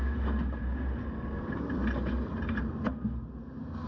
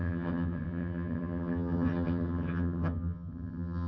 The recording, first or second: first